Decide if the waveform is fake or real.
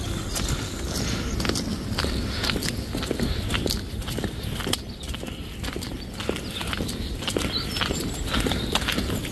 real